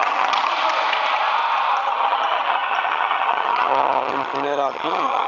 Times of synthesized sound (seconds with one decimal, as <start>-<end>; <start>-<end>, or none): 0.0-0.5; 1.8-5.3